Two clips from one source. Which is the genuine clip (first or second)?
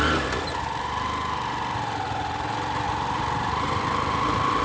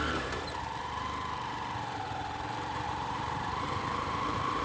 first